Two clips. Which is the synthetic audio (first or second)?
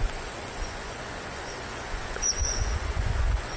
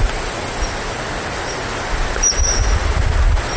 first